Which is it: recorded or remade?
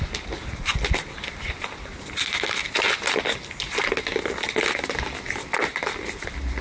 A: recorded